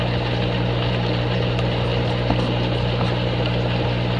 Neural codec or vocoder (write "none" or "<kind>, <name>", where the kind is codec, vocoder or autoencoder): none